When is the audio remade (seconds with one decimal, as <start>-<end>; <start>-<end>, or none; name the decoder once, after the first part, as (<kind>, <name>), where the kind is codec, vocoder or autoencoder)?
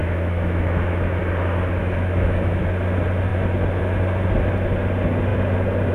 0.0-1.2 (autoencoder, DAC-VAE); 1.8-2.6